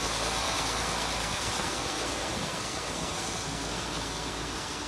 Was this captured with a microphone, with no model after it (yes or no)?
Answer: no